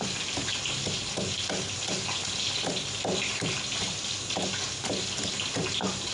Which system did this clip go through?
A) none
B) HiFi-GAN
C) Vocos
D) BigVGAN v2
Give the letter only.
A